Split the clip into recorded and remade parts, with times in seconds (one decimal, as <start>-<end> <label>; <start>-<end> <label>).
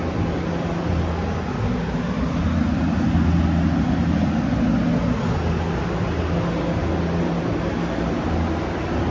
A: 0.0-9.1 recorded